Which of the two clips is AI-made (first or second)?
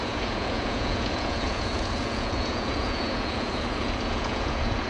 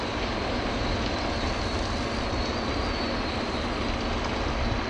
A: first